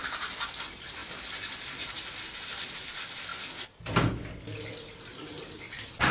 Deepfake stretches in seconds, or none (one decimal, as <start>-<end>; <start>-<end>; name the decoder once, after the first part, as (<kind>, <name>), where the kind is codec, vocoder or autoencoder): 1.0-1.9 (vocoder, BigVGAN v2)